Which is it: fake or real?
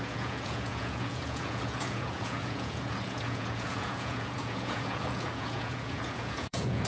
fake